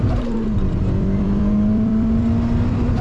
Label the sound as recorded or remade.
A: remade